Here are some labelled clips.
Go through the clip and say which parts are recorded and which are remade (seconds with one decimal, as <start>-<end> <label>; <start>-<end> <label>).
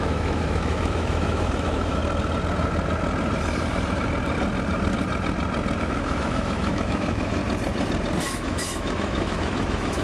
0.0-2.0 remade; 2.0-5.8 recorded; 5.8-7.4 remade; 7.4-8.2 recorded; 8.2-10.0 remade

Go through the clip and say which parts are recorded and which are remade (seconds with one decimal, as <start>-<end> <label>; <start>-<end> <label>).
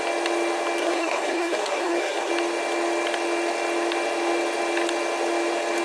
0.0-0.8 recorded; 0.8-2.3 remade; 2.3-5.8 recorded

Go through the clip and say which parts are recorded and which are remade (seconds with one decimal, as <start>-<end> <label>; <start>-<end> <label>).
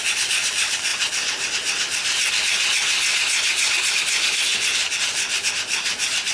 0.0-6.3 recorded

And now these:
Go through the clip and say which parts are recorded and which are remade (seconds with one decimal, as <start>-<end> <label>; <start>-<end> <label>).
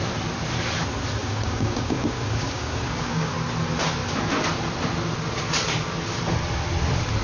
0.0-1.2 recorded; 1.2-3.3 remade; 3.3-7.2 recorded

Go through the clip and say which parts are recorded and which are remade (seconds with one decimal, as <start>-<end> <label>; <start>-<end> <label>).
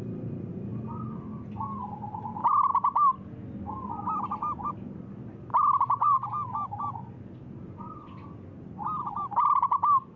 0.0-10.2 recorded